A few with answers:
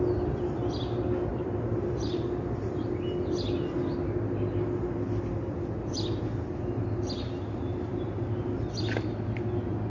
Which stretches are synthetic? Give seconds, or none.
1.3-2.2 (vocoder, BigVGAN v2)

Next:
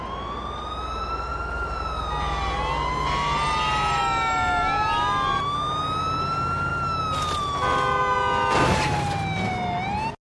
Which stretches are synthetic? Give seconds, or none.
none

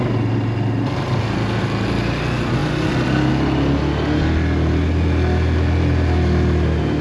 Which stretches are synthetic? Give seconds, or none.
none

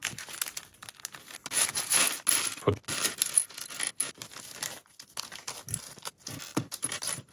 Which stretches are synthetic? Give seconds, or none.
6.5-7.3 (vocoder, BigVGAN v2)

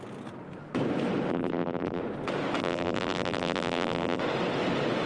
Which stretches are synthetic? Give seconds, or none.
1.3-2.0 (vocoder, BigVGAN v2); 2.6-4.2

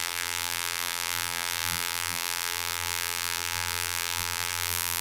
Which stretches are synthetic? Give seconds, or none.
0.0-5.0 (vocoder, BigVGAN v2)